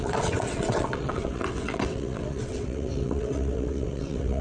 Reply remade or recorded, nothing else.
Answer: remade